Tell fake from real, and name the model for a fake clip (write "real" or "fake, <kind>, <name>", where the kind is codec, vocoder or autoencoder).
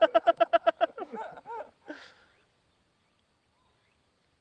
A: real